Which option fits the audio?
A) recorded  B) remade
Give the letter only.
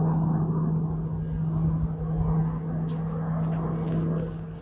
A